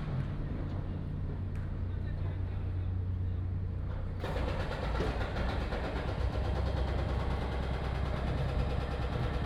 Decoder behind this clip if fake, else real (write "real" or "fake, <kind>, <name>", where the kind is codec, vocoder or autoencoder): real